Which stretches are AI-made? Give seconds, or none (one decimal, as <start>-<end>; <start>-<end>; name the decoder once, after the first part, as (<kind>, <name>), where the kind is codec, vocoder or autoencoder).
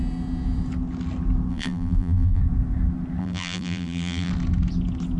1.5-2.4 (vocoder, BigVGAN v2); 3.2-4.3